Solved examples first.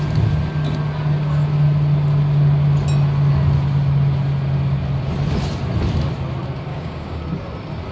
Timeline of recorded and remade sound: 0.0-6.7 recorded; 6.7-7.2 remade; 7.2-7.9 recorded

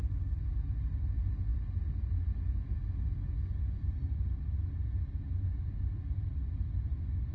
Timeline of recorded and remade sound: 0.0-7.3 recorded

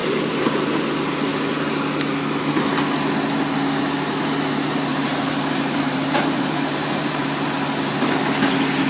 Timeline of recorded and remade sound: 0.0-0.6 remade; 0.6-4.9 recorded; 4.9-7.2 remade; 7.2-8.9 recorded

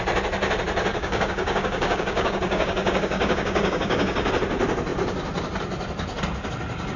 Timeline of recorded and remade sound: 0.0-0.9 recorded; 0.9-4.3 remade; 4.3-7.0 recorded

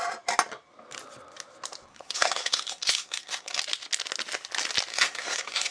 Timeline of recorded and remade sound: 0.0-1.9 recorded; 1.9-3.6 remade; 3.6-4.9 recorded; 4.9-5.7 remade